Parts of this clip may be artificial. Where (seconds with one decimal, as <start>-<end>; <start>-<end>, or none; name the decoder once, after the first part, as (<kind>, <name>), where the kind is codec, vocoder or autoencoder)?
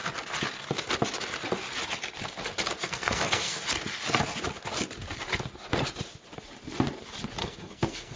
2.8-3.6 (codec, SNAC); 7.4-8.2